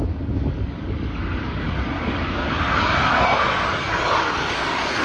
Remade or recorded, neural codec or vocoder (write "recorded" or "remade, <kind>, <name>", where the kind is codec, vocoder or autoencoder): remade, codec, DAC